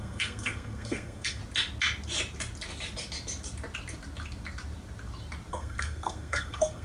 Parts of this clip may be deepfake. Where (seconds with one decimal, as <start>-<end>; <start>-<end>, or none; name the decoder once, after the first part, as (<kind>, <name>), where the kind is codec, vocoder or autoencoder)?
0.0-1.4 (codec, SNAC); 5.5-6.8